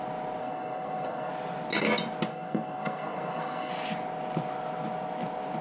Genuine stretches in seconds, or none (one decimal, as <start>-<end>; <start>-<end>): 0.0-0.4; 1.3-2.3; 3.7-5.6